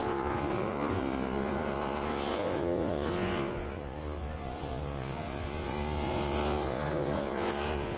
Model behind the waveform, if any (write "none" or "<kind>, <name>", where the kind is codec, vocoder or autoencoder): vocoder, Vocos